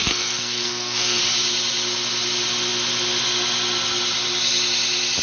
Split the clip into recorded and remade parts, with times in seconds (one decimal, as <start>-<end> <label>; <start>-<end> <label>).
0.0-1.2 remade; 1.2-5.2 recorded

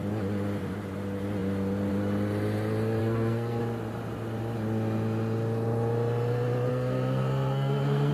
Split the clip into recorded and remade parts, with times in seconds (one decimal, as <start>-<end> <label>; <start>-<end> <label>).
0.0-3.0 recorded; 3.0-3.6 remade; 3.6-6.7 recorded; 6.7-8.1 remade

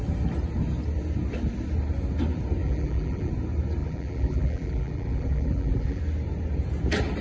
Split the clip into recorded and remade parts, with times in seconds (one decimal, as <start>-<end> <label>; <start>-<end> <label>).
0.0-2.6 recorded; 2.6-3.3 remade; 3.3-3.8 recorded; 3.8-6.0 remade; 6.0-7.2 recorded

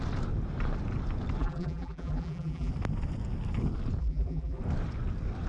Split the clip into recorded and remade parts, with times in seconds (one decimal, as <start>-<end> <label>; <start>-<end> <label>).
0.0-1.4 recorded; 1.4-2.7 remade; 2.7-4.0 recorded; 4.0-4.6 remade; 4.6-5.5 recorded